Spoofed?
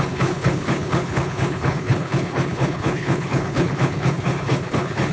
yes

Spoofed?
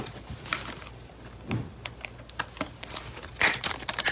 no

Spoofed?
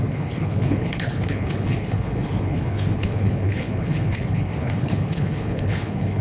yes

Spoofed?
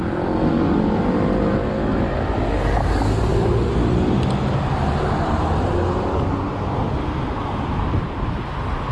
no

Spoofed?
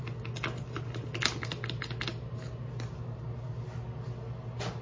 no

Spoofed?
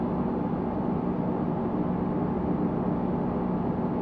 no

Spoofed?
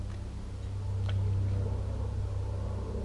no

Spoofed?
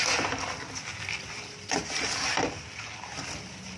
no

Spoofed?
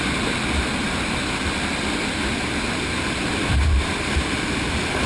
no